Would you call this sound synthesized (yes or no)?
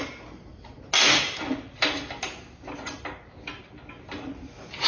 no